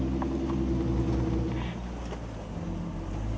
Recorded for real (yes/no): yes